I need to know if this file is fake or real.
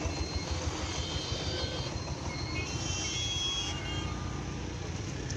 real